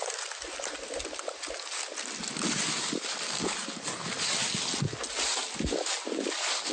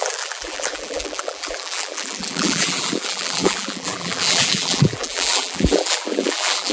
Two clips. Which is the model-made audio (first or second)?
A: second